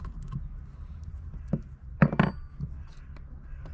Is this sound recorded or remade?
recorded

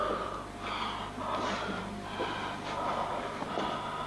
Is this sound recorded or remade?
recorded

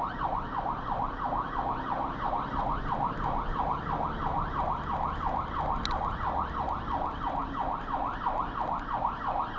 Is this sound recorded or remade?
recorded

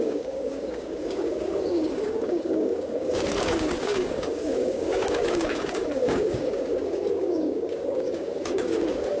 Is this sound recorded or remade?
remade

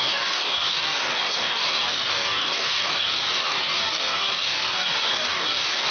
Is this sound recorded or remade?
remade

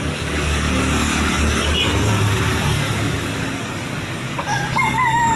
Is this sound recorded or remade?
remade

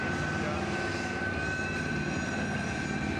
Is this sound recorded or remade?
recorded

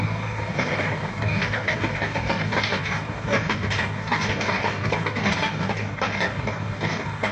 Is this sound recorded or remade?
remade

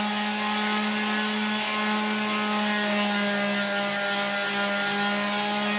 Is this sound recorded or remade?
recorded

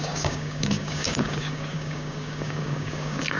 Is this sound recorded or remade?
remade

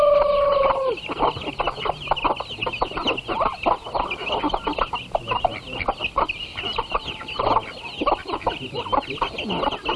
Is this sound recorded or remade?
recorded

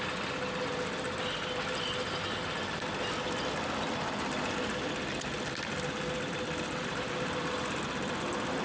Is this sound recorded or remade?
recorded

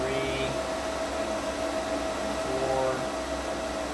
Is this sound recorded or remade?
recorded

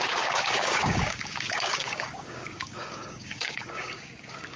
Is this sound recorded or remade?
remade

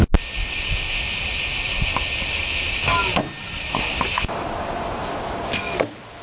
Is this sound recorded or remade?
recorded